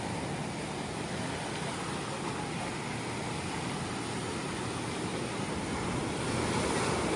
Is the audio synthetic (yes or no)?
no